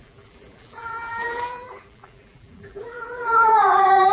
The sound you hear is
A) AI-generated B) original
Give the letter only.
A